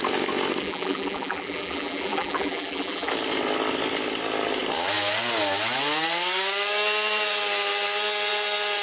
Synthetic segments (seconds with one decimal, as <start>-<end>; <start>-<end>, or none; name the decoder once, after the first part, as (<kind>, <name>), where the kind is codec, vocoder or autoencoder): 0.6-3.1 (vocoder, BigVGAN v2)